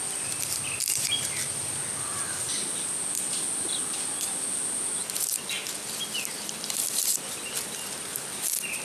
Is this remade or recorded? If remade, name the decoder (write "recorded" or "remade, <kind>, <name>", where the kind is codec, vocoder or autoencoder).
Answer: recorded